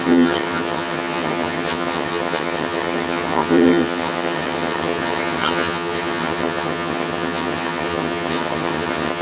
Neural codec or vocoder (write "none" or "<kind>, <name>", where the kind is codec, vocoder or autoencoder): vocoder, HiFi-GAN